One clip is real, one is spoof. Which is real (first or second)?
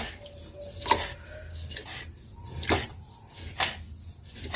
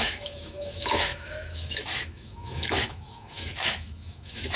first